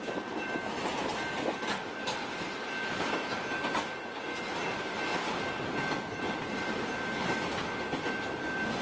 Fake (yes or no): no